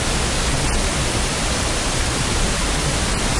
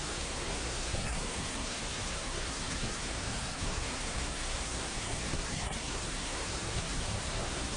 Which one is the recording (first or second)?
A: first